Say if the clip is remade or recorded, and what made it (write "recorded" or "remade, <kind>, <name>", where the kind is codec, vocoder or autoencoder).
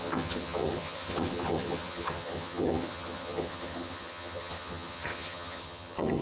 remade, vocoder, HiFi-GAN